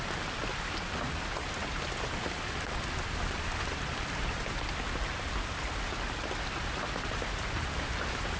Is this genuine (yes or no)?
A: yes